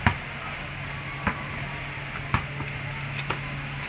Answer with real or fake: real